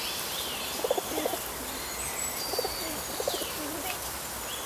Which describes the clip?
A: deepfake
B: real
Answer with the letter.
A